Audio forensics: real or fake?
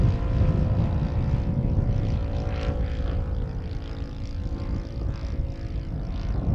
real